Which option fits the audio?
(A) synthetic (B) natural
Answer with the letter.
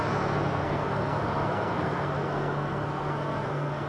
A